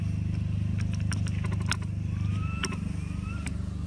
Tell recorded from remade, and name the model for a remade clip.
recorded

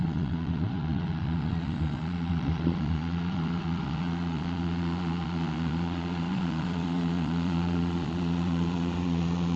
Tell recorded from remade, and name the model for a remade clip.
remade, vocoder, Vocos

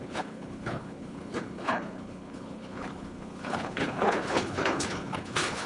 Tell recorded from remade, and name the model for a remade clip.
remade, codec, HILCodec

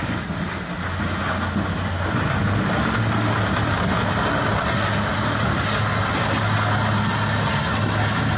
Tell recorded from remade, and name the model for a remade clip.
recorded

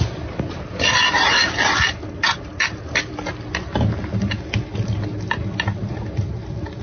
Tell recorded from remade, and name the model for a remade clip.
recorded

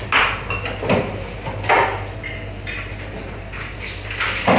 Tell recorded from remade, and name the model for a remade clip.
recorded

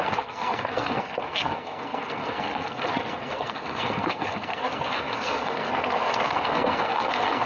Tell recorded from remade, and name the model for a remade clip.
remade, codec, SNAC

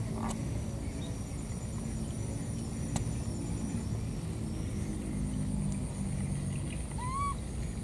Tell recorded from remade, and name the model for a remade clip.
recorded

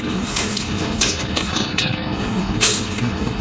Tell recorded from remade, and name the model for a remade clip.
remade, codec, SNAC